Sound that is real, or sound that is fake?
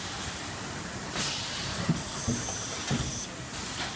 real